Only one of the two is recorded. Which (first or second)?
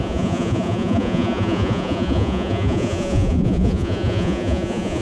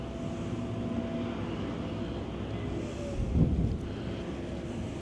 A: second